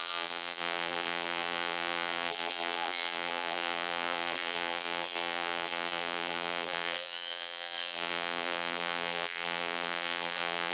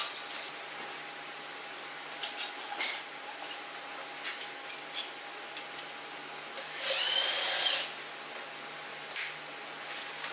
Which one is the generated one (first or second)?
first